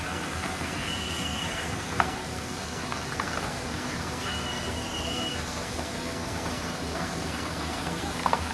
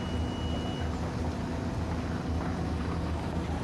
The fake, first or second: first